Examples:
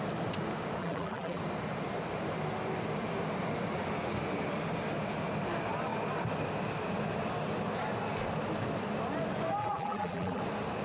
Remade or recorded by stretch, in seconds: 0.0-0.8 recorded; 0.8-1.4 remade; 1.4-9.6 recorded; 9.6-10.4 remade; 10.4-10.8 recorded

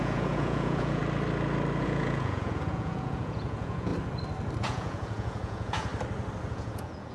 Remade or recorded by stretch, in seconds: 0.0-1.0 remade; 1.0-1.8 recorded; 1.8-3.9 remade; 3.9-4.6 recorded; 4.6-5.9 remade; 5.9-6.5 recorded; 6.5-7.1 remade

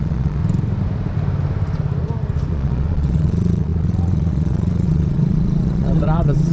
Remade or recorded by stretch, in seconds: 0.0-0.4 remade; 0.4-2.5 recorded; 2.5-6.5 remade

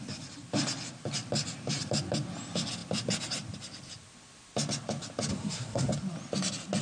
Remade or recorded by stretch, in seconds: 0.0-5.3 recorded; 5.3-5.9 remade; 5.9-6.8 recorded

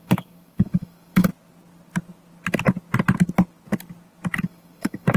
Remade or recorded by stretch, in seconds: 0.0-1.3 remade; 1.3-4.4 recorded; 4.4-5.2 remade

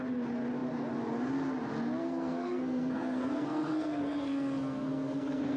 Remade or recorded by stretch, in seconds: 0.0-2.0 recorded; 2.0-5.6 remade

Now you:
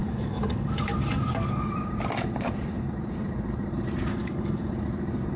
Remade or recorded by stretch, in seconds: 0.0-1.7 remade; 1.7-4.1 recorded; 4.1-4.7 remade; 4.7-5.4 recorded